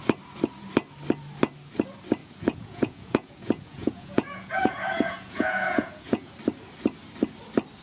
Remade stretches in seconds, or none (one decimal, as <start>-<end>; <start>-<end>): 2.2-6.3